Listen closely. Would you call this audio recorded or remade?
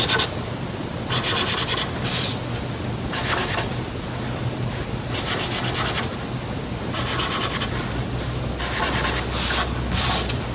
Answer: recorded